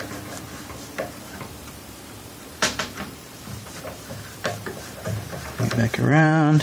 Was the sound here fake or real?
fake